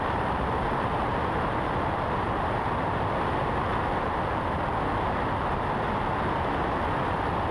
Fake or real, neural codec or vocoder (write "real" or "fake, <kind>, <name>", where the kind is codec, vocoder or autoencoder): real